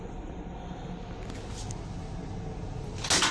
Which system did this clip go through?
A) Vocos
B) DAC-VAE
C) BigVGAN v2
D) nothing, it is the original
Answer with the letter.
D